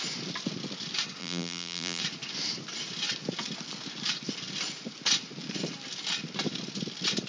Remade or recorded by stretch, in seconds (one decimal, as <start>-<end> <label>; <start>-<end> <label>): 0.0-1.2 recorded; 1.2-2.0 remade; 2.0-7.3 recorded